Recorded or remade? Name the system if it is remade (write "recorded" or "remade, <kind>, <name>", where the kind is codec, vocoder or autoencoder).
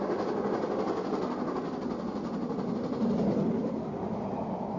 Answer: recorded